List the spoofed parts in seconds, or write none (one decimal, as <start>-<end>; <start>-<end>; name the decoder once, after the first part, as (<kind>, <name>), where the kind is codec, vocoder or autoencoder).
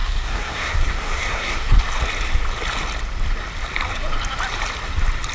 0.0-1.8 (codec, SNAC)